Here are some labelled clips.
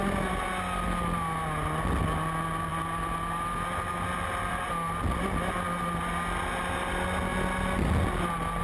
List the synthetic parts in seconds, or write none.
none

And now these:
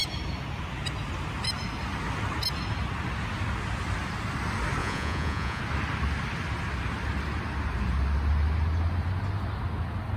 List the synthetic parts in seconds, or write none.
4.8-5.6 (vocoder, Vocos)

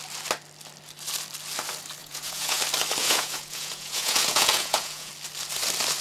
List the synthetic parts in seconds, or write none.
2.0-2.6 (vocoder, Vocos); 3.0-5.1

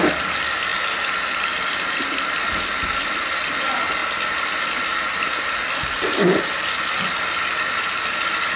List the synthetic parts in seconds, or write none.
none

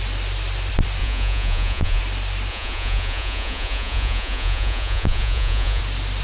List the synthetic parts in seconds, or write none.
1.0-2.0 (vocoder, Vocos); 2.5-5.8